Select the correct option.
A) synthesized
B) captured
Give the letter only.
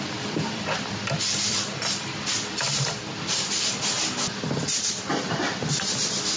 A